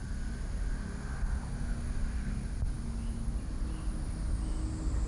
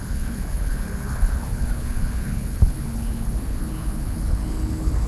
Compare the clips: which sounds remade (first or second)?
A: second